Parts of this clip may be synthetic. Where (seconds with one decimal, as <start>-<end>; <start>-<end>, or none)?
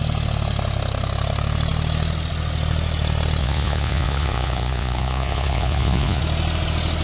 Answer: 3.4-6.2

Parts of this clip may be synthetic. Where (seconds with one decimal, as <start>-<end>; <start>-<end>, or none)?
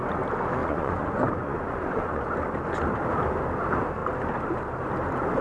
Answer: 0.6-2.3